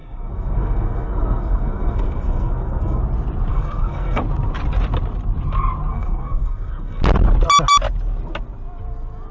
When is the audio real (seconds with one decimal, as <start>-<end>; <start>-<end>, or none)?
3.0-3.5; 4.2-5.9; 7.0-9.3